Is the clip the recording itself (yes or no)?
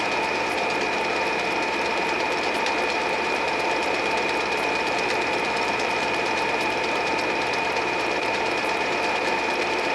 no